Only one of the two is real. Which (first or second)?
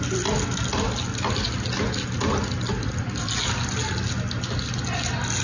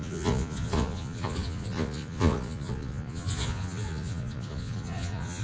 first